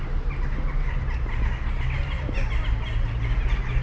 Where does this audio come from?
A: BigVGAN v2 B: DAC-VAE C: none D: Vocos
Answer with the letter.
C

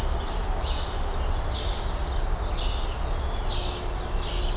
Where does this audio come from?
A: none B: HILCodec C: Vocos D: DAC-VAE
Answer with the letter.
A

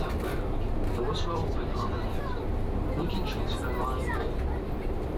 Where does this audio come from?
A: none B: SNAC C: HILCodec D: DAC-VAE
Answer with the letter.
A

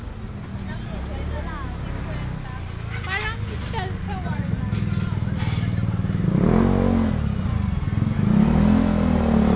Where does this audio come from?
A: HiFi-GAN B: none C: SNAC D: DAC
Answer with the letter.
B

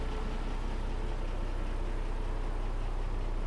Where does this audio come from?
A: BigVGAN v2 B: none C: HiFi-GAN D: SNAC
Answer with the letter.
B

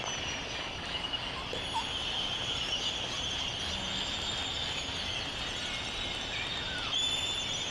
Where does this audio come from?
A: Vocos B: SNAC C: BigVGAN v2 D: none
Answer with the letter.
D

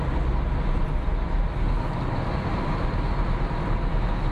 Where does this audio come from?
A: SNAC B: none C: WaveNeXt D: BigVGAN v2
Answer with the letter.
B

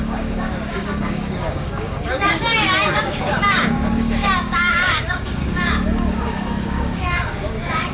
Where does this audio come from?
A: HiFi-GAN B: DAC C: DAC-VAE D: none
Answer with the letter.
B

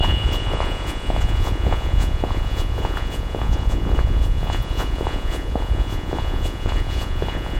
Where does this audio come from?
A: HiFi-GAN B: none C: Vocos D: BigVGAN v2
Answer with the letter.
C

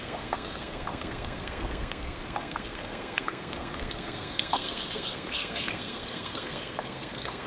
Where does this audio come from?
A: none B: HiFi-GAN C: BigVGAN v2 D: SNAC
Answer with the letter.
D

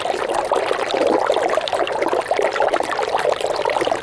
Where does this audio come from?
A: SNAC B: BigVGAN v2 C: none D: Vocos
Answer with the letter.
B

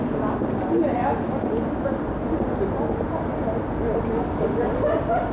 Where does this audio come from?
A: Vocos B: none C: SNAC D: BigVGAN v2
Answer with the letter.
B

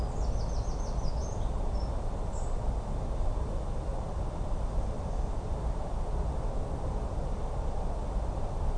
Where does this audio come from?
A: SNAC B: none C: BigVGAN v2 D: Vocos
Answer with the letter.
B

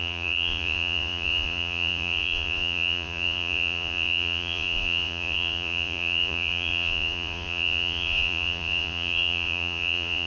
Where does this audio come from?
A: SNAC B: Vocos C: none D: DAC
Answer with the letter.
B